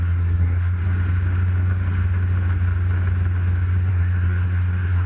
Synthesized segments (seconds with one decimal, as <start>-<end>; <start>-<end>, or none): 0.0-0.8; 3.9-5.1